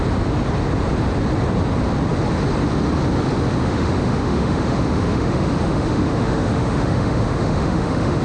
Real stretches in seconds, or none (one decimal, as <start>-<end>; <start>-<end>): 0.0-3.6